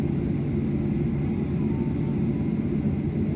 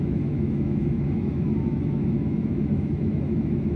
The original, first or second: first